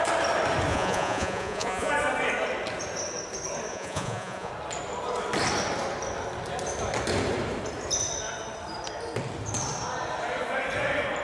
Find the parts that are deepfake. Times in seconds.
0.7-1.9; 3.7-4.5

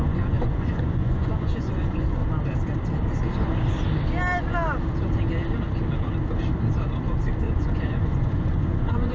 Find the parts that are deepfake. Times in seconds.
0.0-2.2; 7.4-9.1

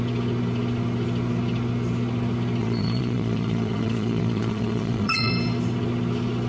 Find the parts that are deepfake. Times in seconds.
2.6-5.3